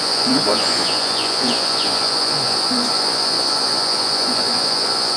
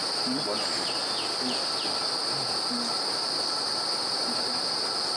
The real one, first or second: second